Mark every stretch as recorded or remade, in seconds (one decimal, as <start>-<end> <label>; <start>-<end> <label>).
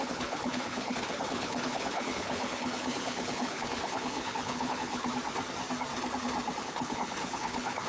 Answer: 0.0-5.1 remade; 5.1-6.6 recorded; 6.6-7.9 remade